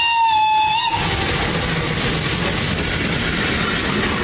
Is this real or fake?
real